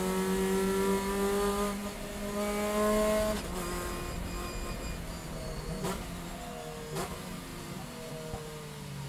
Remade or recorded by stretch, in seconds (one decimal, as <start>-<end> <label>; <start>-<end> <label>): 0.0-7.5 recorded; 7.5-8.1 remade; 8.1-9.1 recorded